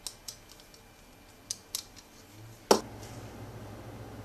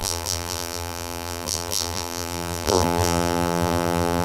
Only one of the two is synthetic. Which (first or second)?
second